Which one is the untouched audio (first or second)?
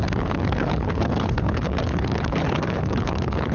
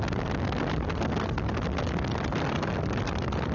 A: second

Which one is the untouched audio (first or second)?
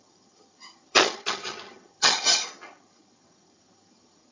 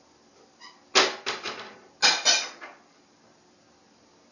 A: second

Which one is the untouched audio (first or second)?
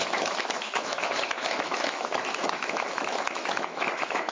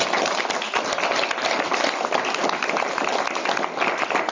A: second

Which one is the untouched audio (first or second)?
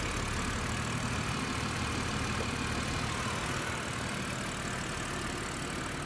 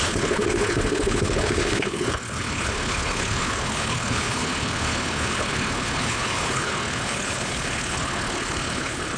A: first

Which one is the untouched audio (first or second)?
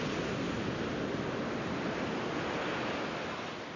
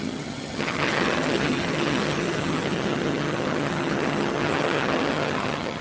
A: first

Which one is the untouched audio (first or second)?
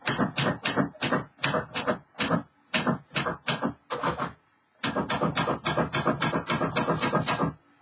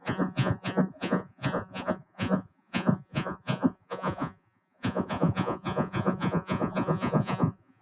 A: first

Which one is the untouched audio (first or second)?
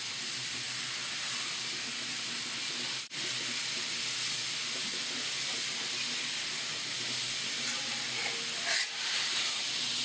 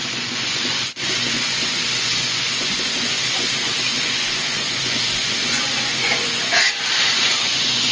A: first